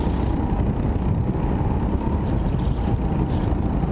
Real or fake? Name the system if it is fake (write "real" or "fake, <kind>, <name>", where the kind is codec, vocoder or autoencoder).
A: real